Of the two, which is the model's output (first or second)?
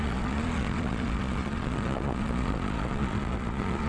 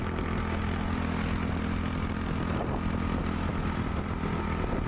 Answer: first